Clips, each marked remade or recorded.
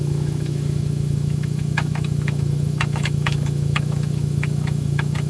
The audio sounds remade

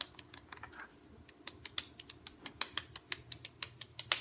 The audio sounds recorded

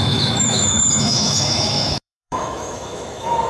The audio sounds remade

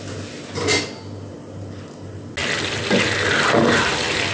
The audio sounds recorded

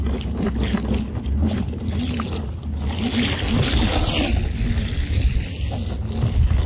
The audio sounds recorded